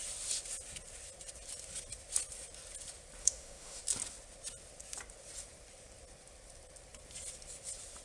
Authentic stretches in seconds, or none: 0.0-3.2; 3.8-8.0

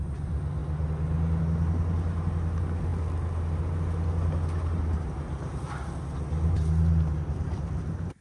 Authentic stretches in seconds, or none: 0.0-8.2

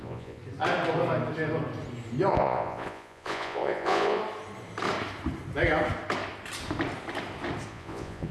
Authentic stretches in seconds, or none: 0.4-2.3; 4.2-7.7